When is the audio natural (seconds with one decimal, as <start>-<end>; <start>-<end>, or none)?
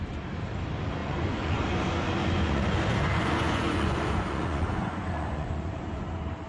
0.0-1.0; 1.6-2.2; 6.1-6.5